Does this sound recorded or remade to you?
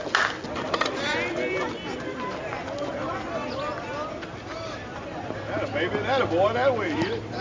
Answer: recorded